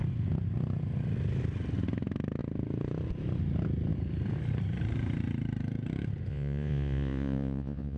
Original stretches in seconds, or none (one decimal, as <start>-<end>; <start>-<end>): 0.0-6.3